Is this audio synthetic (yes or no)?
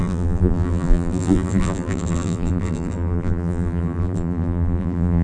yes